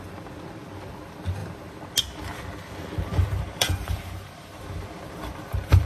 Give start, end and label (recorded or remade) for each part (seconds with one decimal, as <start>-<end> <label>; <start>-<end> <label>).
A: 0.0-3.2 recorded; 3.2-5.9 remade

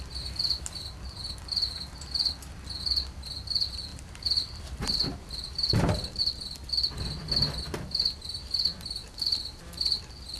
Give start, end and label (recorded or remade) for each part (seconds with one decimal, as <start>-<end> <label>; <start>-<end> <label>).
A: 0.0-3.9 recorded; 3.9-6.2 remade; 6.2-9.0 recorded; 9.0-9.6 remade; 9.6-10.4 recorded

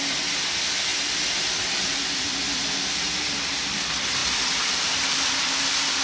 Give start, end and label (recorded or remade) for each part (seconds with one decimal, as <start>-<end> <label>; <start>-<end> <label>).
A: 0.0-0.9 recorded; 0.9-2.3 remade; 2.3-4.2 recorded; 4.2-5.6 remade; 5.6-6.0 recorded

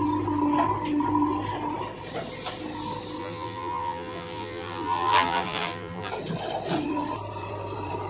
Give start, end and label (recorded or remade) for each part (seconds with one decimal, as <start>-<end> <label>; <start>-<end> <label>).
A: 0.0-3.2 recorded; 3.2-6.1 remade; 6.1-8.1 recorded

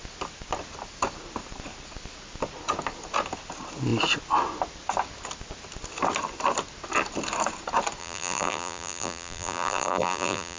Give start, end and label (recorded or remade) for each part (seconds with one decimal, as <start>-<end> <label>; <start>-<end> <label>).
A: 0.0-8.0 recorded; 8.0-10.6 remade

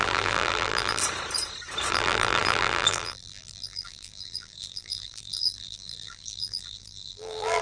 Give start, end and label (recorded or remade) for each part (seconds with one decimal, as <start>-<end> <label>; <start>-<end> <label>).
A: 0.0-1.0 remade; 1.0-1.9 recorded; 1.9-7.6 remade